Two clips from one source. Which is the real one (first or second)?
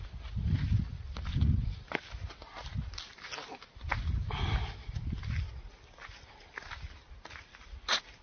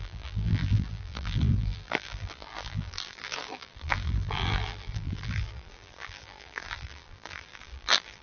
first